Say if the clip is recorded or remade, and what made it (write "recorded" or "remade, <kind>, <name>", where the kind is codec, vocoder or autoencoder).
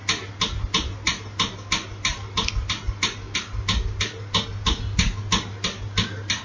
recorded